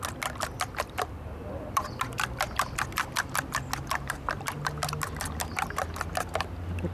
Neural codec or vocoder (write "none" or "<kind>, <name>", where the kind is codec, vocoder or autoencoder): none